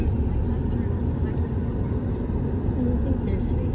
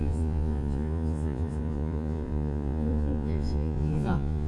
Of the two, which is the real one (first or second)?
first